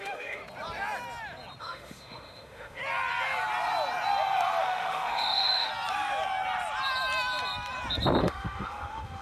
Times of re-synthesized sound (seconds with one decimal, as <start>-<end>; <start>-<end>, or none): 0.0-0.4; 1.6-2.8; 4.6-5.7; 8.2-9.2